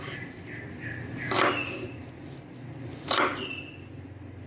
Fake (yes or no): no